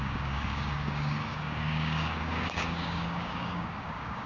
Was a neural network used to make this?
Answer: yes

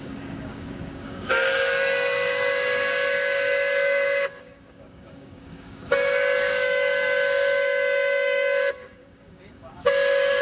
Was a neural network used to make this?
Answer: yes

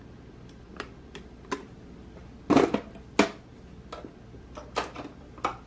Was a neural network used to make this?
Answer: no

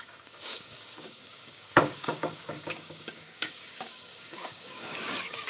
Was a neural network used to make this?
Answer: yes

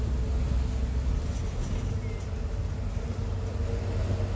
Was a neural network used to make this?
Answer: no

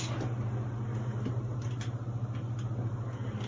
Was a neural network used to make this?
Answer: no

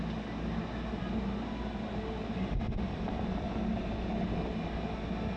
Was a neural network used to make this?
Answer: no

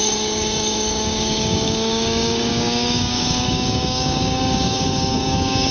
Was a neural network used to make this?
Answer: yes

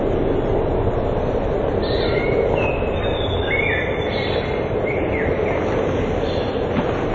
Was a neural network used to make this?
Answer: no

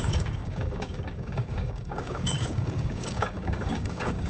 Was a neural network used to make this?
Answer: yes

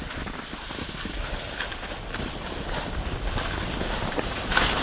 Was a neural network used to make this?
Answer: no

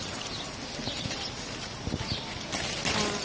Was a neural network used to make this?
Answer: no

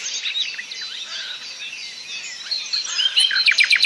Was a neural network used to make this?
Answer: no